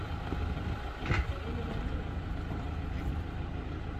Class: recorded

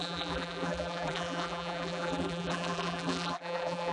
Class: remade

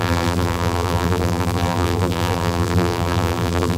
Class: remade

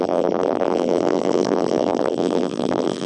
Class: remade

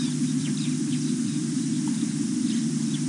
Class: recorded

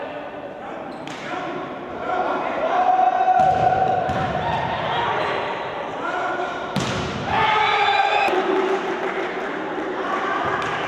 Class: remade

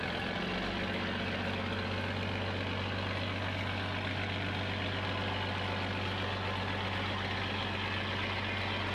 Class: recorded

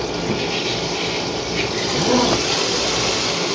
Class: recorded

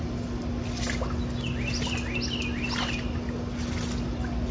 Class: recorded